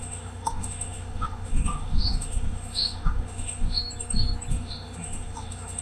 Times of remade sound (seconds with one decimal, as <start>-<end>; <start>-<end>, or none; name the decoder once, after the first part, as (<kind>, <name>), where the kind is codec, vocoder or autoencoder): 0.0-3.8 (autoencoder, DAC-VAE); 4.5-5.8